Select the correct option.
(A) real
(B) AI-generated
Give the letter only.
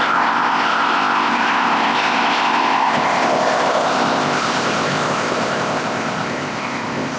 B